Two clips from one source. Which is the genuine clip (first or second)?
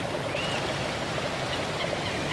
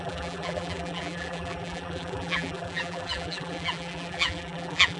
first